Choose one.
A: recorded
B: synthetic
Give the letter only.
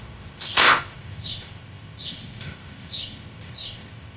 B